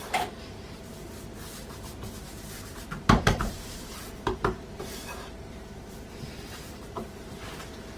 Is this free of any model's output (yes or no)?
no